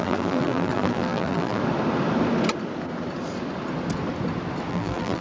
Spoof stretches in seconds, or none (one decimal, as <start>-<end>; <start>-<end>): 0.0-1.6; 4.7-5.2